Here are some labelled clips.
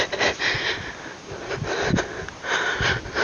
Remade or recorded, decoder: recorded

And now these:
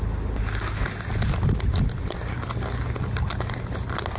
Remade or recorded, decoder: recorded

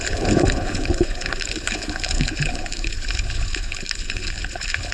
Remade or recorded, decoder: remade, codec, HILCodec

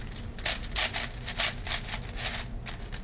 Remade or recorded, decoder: recorded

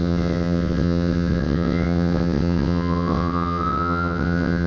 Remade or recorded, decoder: remade, vocoder, WaveNeXt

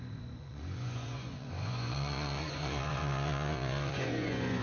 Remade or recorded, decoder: remade, vocoder, Vocos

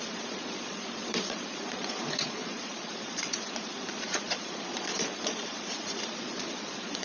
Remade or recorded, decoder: remade, vocoder, Vocos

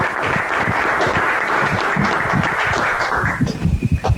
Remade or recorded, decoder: remade, vocoder, BigVGAN v2